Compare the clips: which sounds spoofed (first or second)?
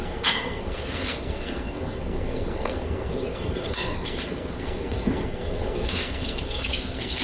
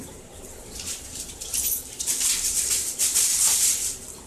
first